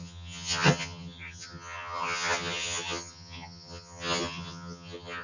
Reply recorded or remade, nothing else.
remade